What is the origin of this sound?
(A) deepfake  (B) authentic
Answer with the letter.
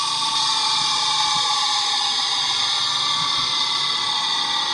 B